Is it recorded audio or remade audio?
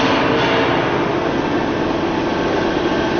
recorded